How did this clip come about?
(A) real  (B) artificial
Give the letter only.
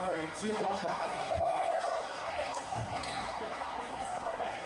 B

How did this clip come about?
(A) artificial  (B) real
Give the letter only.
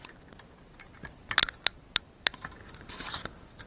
B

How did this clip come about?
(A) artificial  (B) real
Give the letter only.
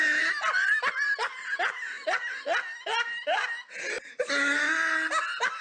B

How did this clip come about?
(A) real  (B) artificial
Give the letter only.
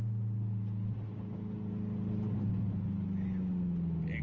A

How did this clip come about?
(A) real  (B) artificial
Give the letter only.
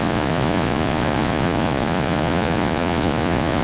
B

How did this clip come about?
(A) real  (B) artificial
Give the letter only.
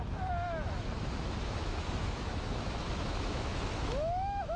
B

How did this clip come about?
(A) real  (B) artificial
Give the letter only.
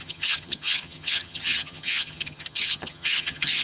B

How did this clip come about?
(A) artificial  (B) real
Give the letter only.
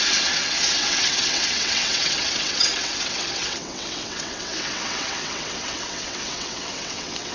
A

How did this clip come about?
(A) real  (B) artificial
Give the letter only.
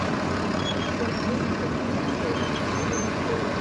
B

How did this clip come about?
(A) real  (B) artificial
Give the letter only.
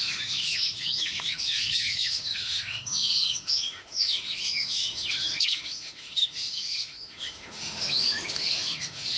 B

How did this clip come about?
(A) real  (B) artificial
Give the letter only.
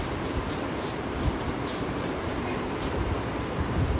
B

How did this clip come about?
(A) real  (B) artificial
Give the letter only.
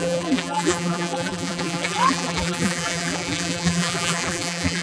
B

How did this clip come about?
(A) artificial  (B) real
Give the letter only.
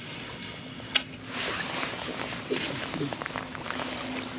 B